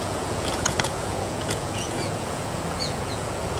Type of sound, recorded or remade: remade